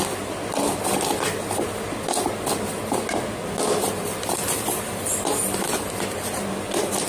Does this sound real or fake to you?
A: real